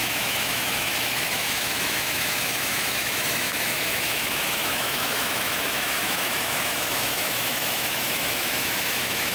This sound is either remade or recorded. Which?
remade